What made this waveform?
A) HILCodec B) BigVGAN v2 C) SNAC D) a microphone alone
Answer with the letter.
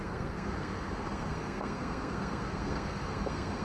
C